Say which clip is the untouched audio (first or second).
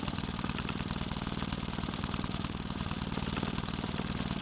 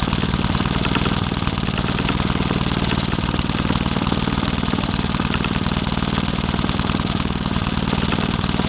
second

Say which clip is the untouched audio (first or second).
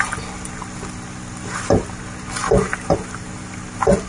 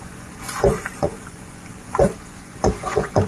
first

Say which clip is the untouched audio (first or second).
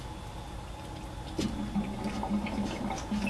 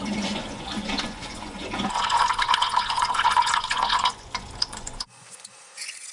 first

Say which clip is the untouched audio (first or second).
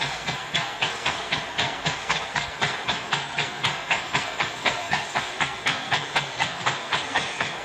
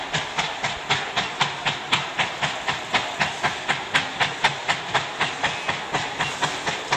second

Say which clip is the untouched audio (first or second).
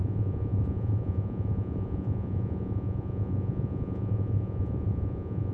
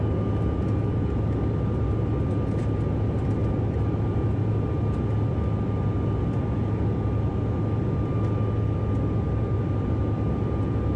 second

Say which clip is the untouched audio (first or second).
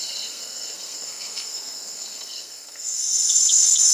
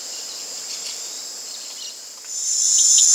second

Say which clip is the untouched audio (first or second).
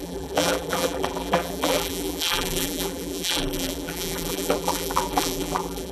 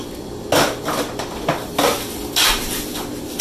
second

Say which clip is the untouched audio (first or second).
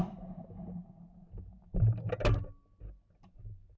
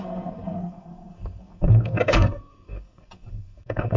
first